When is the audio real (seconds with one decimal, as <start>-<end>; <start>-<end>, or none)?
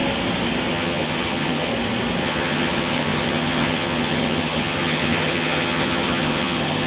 0.0-0.7; 1.7-2.2